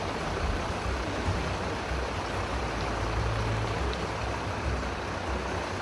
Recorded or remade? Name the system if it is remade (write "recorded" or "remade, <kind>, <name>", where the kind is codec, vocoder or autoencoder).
recorded